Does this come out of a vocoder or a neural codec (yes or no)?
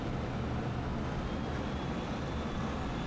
no